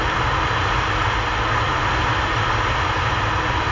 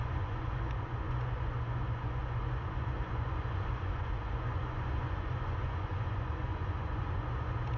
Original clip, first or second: first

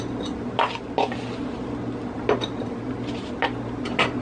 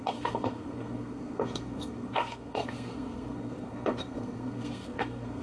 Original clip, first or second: first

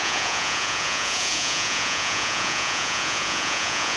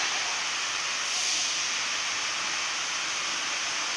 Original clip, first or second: second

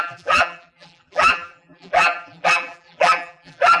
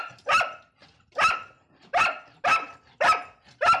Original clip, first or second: second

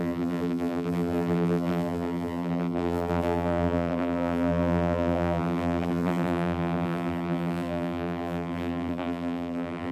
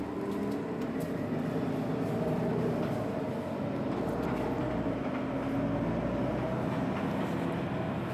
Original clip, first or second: second